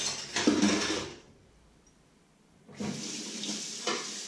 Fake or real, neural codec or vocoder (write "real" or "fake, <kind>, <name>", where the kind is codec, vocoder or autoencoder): real